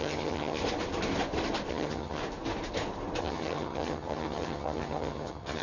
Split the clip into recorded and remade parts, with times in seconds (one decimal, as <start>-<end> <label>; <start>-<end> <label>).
0.0-0.6 remade; 0.6-1.7 recorded; 1.7-2.2 remade; 2.2-3.2 recorded; 3.2-5.6 remade